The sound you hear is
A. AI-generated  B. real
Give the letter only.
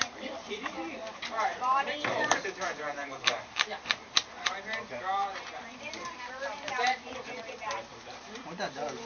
A